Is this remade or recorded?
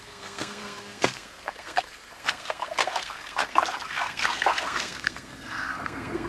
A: remade